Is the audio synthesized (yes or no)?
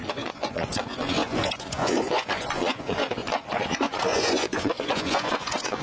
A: yes